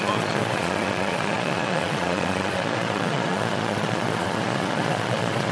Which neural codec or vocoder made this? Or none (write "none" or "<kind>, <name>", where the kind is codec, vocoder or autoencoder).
vocoder, Vocos